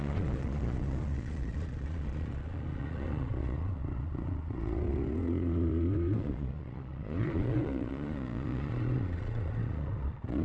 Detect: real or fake fake